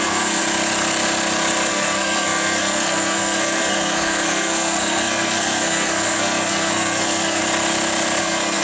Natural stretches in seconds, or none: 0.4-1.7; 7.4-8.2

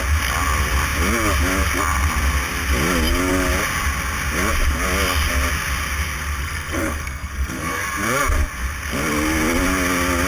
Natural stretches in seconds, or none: 0.0-6.4; 7.8-10.3

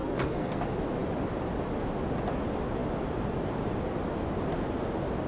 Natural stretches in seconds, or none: 0.6-5.3